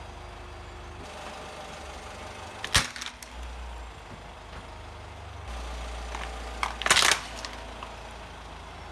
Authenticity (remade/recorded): recorded